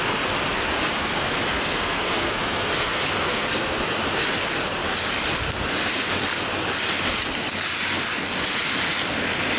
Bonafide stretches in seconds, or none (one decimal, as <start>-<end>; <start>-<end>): 0.0-1.0; 3.8-9.6